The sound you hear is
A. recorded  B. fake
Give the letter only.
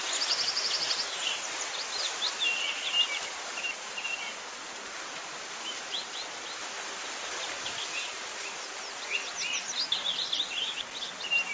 A